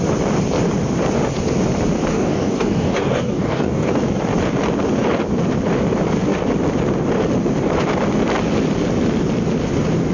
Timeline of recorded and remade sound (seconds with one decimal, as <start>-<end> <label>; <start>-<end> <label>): 0.0-2.1 recorded; 2.1-3.9 remade; 3.9-10.1 recorded